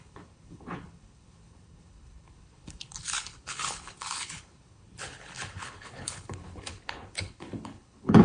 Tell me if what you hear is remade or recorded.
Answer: remade